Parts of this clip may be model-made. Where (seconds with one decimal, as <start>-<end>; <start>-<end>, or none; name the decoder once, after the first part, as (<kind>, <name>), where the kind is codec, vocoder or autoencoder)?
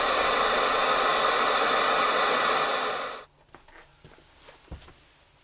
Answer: none